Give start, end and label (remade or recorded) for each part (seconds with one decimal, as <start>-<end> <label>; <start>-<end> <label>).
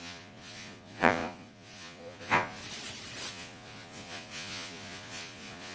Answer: 0.0-2.6 remade; 2.6-3.3 recorded; 3.3-5.7 remade